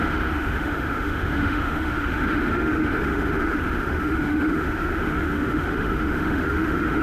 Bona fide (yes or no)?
no